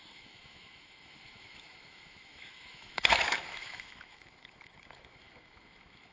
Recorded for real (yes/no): no